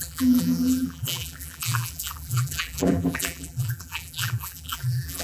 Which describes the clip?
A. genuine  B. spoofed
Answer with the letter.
B